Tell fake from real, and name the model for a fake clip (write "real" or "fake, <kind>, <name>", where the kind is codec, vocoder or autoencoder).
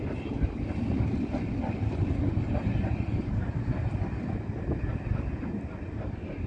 real